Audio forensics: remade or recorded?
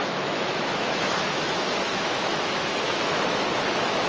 remade